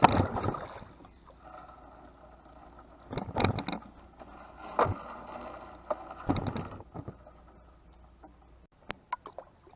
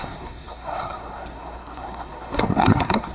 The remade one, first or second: second